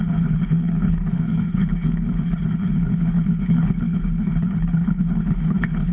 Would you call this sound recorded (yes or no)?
no